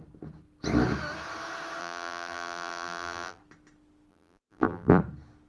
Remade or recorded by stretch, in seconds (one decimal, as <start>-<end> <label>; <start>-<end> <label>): 0.0-1.8 recorded; 1.8-3.4 remade; 3.4-4.1 recorded; 4.1-5.0 remade; 5.0-5.5 recorded